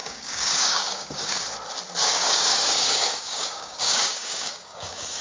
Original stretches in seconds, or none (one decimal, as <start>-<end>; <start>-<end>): 1.4-2.0